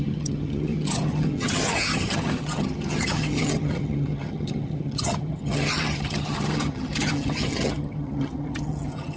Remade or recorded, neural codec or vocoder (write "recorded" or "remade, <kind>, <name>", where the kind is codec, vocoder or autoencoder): remade, vocoder, HiFi-GAN